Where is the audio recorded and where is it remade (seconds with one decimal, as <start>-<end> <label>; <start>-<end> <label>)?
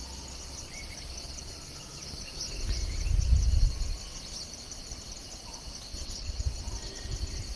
0.0-5.9 recorded; 5.9-6.6 remade; 6.6-7.6 recorded